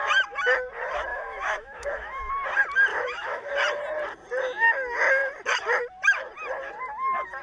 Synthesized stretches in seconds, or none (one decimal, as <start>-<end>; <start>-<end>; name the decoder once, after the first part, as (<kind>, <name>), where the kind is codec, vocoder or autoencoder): 1.1-2.3 (autoencoder, DAC-VAE); 2.9-3.5